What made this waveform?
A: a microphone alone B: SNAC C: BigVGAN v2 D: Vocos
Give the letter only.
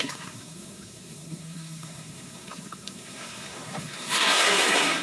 B